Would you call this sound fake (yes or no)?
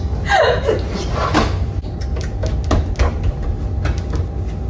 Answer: no